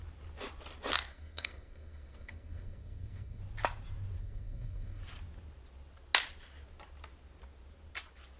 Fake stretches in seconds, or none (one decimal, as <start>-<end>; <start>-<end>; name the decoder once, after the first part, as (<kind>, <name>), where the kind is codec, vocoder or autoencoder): 1.1-3.4 (codec, SNAC); 4.2-5.0